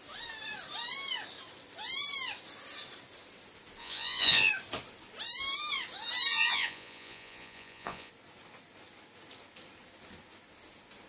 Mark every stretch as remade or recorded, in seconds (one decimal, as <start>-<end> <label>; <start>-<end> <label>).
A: 0.0-3.8 recorded; 3.8-4.5 remade; 4.5-6.3 recorded; 6.3-8.1 remade; 8.1-11.1 recorded